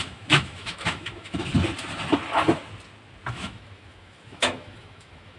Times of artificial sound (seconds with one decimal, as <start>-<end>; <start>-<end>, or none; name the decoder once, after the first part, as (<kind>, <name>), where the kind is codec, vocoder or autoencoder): 0.0-1.4 (autoencoder, DAC-VAE); 3.3-5.4